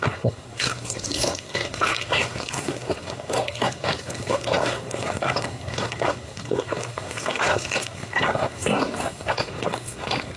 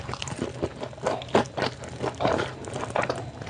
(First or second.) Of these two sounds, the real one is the second